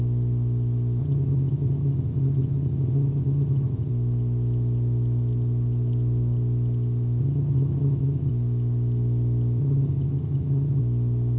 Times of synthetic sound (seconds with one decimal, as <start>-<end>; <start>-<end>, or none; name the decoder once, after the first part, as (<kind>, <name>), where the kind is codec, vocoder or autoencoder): 1.0-3.9 (vocoder, HiFi-GAN); 7.2-8.3; 9.6-10.8